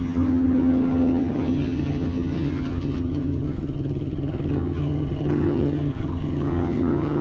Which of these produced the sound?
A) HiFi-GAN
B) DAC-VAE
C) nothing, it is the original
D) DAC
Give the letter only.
A